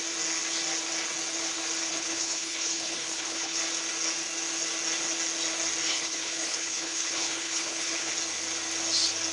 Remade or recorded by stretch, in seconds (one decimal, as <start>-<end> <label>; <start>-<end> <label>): 0.0-1.9 recorded; 1.9-3.6 remade; 3.6-5.9 recorded; 5.9-8.1 remade; 8.1-9.3 recorded